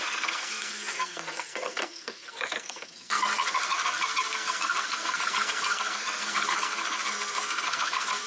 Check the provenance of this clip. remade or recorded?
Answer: remade